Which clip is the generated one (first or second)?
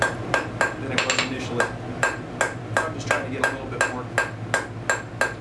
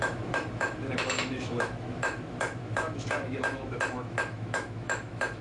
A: second